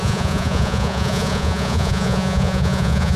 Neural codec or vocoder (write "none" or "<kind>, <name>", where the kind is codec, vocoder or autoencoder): vocoder, Vocos